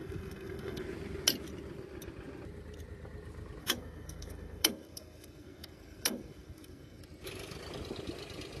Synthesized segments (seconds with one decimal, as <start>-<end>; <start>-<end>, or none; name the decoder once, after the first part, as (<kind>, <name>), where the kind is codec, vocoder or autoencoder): 0.0-0.8 (codec, SNAC); 3.6-7.0